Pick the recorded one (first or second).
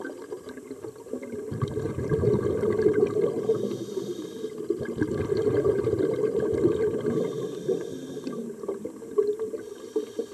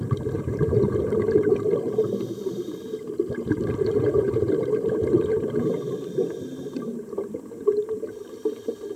first